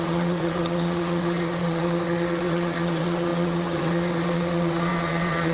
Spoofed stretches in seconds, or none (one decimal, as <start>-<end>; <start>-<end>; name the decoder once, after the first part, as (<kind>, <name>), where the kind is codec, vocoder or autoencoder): 0.0-5.5 (vocoder, WaveNeXt)